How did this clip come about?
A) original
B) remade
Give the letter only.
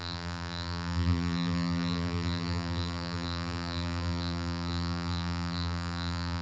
B